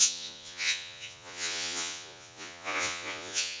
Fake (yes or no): yes